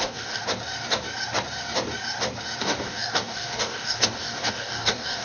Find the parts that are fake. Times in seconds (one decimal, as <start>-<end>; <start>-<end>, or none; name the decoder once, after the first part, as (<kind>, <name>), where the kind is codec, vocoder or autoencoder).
0.0-0.4 (codec, DAC); 2.6-5.2